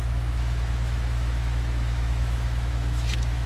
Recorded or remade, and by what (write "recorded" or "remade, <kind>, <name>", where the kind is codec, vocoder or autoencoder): remade, autoencoder, DAC-VAE